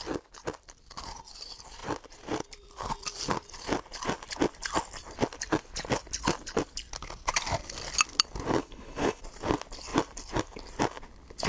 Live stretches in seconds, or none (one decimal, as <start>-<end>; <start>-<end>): 0.0-8.6; 9.2-11.5